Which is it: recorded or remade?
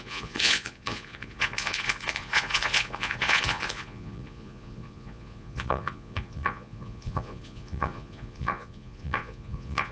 remade